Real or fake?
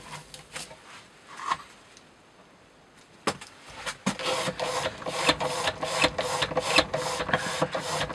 real